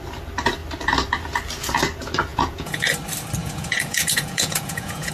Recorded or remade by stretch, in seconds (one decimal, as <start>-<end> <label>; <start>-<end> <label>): 0.0-2.3 recorded; 2.3-2.9 remade; 2.9-3.4 recorded; 3.4-5.1 remade